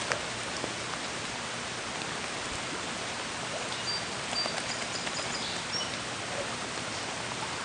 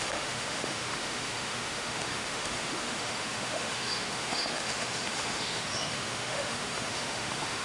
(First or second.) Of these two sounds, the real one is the first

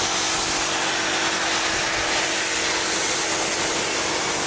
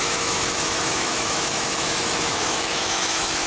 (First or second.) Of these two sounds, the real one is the first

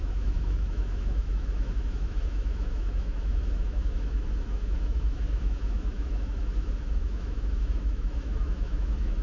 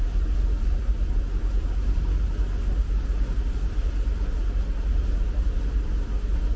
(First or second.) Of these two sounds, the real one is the second